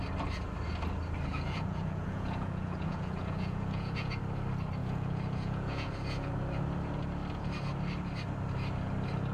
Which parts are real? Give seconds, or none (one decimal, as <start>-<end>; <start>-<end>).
0.0-1.3; 4.2-4.8; 6.3-9.3